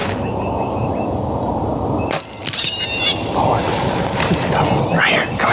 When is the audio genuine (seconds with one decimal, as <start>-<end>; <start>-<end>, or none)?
0.9-5.5